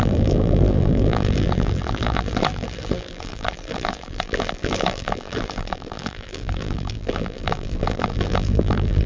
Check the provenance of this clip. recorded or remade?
remade